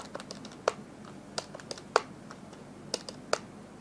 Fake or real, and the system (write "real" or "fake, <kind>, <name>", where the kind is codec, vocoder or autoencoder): real